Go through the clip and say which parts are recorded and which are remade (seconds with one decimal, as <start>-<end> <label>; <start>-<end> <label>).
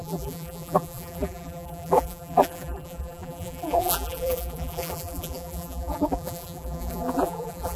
0.0-7.8 remade